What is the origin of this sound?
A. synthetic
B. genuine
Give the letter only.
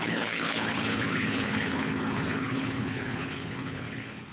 A